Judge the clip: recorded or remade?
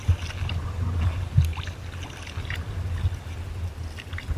recorded